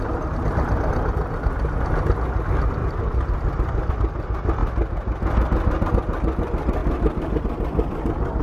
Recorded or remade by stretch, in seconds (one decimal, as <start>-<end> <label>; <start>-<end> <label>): 0.0-2.8 recorded; 2.8-3.9 remade; 3.9-8.4 recorded